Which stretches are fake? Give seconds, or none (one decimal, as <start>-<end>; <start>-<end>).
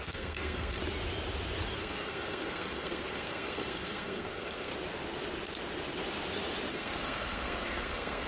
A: 0.0-0.8; 1.8-4.7; 6.7-8.3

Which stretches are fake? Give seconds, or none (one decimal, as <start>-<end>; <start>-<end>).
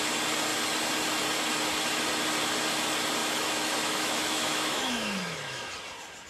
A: 3.2-5.7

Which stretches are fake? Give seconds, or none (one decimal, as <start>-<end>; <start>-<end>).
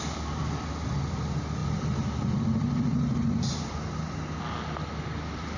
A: 0.0-5.6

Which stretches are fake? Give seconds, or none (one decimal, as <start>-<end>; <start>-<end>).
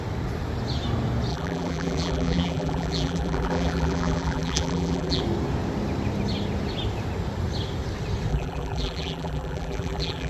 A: 1.3-5.2; 8.3-10.3